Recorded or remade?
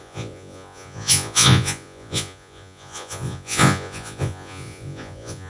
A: remade